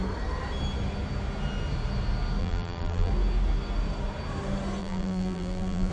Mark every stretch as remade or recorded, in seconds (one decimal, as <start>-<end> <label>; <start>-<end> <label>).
0.0-2.4 recorded; 2.4-3.1 remade; 3.1-4.8 recorded; 4.8-5.9 remade